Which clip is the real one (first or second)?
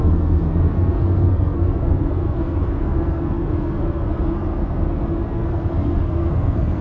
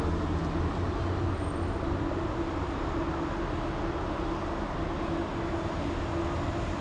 second